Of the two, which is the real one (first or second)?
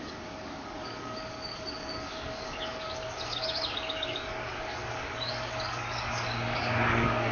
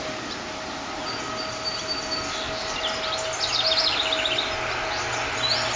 second